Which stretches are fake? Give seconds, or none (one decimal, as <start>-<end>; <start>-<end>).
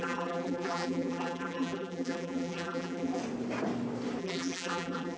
0.0-3.2; 4.2-5.2